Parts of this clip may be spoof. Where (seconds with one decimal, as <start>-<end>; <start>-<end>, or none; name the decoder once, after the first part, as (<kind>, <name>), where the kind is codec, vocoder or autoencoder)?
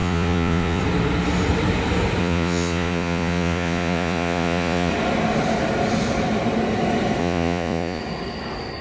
0.0-0.8 (vocoder, Vocos); 2.2-4.9; 7.2-8.0